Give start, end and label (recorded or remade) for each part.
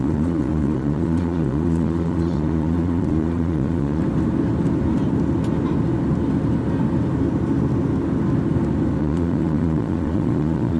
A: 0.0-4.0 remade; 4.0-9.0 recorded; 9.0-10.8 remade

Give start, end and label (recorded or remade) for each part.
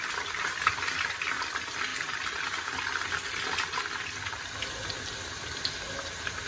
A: 0.0-6.5 recorded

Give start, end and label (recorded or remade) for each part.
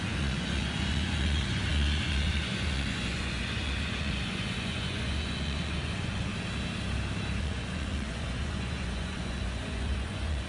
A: 0.0-6.3 remade; 6.3-7.4 recorded; 7.4-10.5 remade